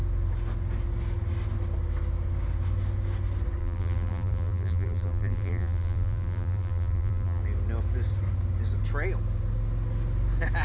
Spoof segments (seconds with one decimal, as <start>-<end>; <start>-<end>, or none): 3.6-7.4